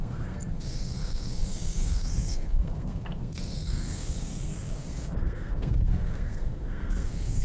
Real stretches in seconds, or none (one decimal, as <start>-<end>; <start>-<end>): none